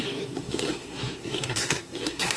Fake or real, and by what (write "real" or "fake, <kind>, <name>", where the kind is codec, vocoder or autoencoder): fake, codec, SNAC